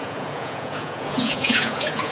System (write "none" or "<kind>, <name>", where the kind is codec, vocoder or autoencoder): vocoder, Vocos